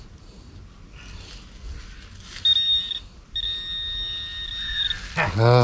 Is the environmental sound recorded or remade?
recorded